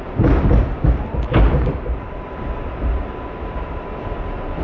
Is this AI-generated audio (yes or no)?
no